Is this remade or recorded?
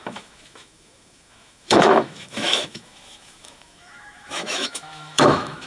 remade